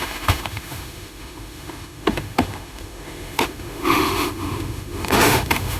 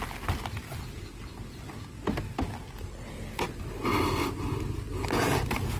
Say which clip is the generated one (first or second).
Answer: first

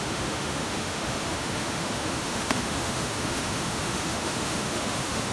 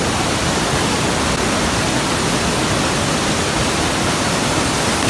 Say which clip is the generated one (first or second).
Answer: first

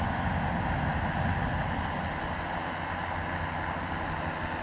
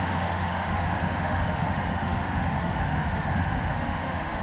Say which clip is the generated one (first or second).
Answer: second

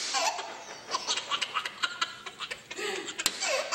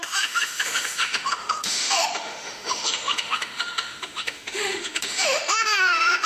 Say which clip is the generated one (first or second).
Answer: second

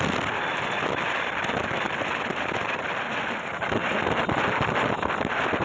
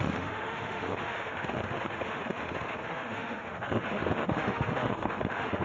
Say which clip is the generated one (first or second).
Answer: second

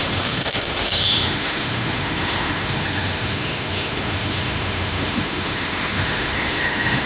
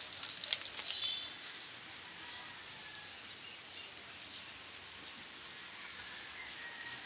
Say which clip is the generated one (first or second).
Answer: first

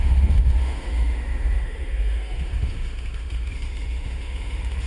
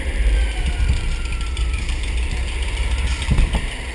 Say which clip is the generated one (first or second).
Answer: first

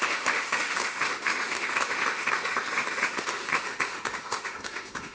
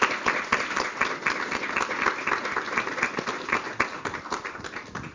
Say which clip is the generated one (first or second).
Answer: first